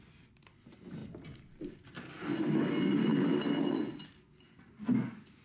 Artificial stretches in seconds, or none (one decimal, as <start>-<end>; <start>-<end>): none